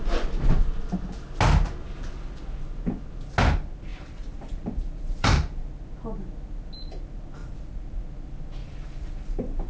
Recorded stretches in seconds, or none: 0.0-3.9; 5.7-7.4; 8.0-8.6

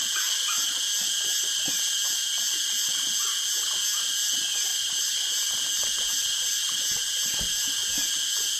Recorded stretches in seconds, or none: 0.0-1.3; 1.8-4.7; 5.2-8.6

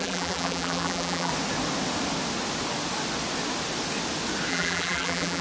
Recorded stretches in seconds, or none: 1.3-4.5

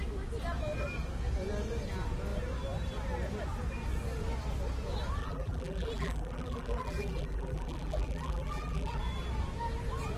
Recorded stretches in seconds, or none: 0.0-5.2; 9.0-10.2